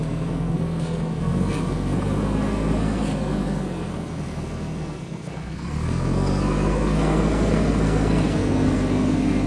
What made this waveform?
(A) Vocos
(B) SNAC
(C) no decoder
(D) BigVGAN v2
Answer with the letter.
B